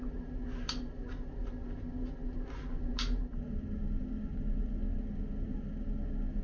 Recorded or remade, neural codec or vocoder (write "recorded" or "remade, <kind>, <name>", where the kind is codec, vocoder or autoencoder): recorded